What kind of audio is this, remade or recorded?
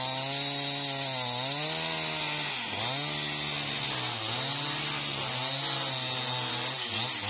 recorded